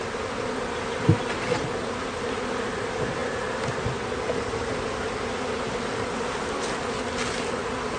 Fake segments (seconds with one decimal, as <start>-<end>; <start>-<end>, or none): none